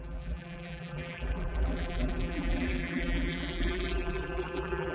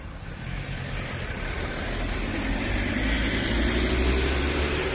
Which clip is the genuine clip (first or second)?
second